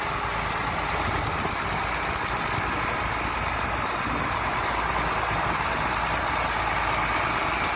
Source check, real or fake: real